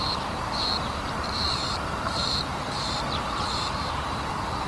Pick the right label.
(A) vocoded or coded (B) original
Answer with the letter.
A